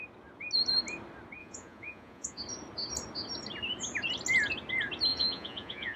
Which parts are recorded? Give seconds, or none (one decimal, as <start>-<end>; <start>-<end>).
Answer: 0.0-1.4; 2.4-5.1